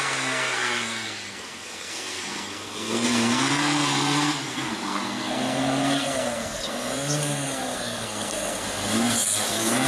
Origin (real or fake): fake